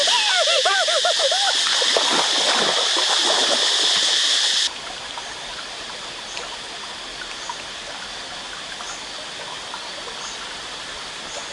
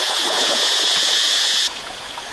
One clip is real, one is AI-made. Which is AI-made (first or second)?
second